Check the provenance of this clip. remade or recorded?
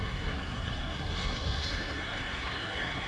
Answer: remade